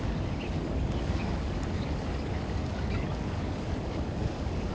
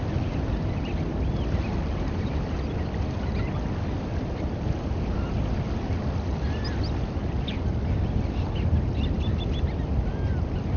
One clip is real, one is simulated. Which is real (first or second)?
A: second